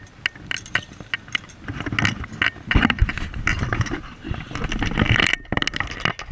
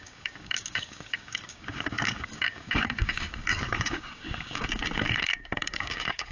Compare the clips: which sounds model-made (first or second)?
second